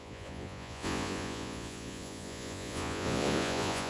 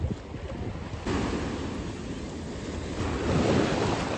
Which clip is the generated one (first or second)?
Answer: first